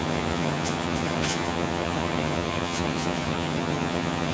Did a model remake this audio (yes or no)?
yes